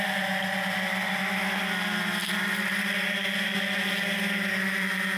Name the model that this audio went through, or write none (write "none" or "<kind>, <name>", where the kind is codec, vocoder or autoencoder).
none